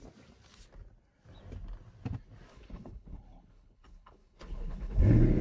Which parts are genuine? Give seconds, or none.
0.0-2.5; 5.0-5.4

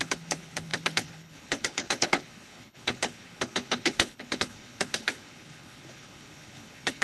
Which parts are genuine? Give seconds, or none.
none